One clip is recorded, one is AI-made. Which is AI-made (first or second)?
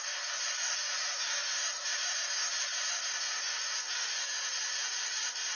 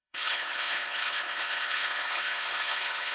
second